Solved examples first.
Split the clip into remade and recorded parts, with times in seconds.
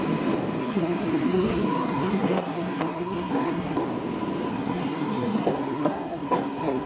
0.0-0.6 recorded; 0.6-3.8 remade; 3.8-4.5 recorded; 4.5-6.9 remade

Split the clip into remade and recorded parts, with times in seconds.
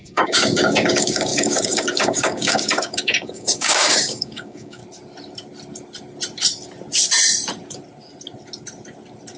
0.0-4.8 remade; 4.8-9.4 recorded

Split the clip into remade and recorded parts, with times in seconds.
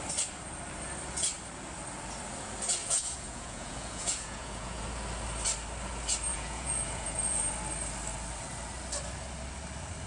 0.0-2.8 recorded; 2.8-4.8 remade; 4.8-6.3 recorded; 6.3-7.4 remade; 7.4-10.1 recorded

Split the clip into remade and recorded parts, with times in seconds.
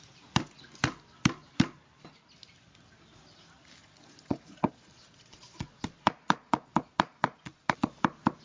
0.0-3.8 recorded; 3.8-8.0 remade; 8.0-8.4 recorded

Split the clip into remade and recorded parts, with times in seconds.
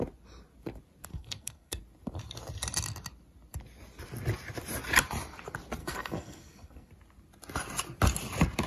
0.0-1.1 recorded; 1.1-1.8 remade; 1.8-5.8 recorded; 5.8-6.9 remade; 6.9-8.7 recorded